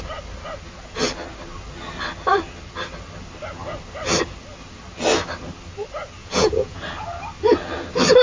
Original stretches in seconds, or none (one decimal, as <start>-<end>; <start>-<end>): 0.0-6.2; 6.8-8.2